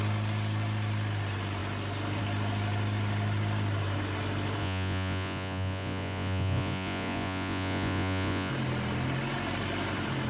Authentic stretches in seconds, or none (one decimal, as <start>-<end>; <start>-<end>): 0.0-4.6; 8.5-10.3